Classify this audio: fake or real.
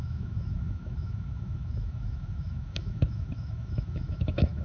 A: fake